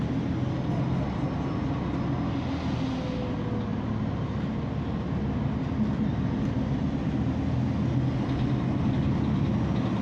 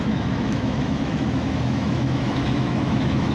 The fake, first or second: second